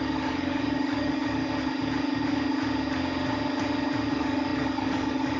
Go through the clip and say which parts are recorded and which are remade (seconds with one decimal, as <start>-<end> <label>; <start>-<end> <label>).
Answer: 0.0-1.4 remade; 1.4-4.1 recorded; 4.1-5.4 remade